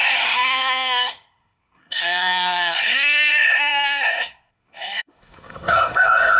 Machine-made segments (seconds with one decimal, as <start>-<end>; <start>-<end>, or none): 0.0-6.4